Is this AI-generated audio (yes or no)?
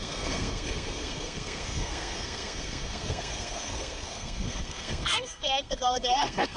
yes